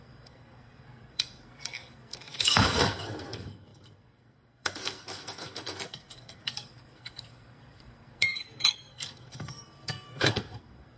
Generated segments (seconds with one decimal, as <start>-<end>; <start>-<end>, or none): 0.0-11.0